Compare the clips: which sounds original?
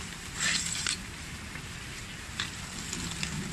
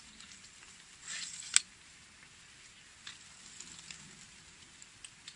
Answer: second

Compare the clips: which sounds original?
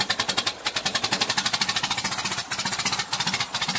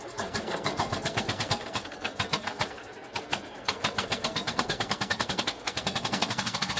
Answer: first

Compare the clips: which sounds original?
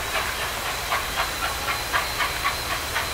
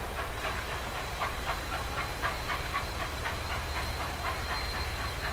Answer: first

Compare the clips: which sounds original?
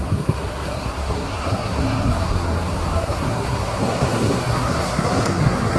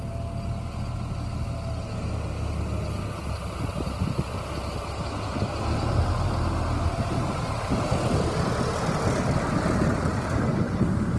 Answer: second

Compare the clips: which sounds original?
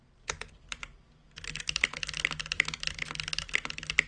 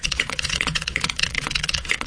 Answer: first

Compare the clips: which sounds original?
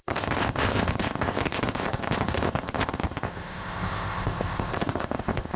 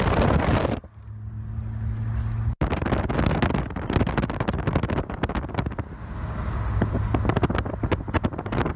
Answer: second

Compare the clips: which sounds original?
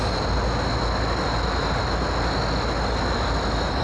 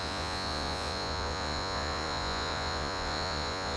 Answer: first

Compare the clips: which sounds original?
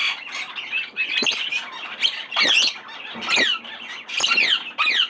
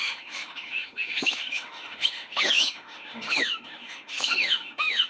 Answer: first